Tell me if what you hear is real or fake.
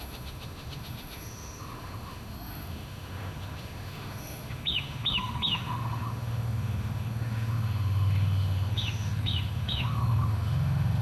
fake